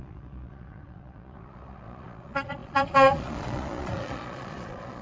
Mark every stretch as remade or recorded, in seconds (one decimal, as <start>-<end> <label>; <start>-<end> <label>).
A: 0.0-5.0 remade

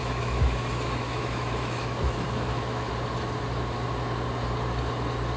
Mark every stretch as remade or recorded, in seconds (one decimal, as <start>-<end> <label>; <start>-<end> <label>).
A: 0.0-2.9 remade; 2.9-5.4 recorded

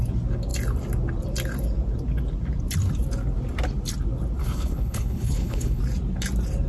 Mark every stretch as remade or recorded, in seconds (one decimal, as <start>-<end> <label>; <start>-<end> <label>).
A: 0.0-4.4 recorded; 4.4-5.8 remade; 5.8-6.7 recorded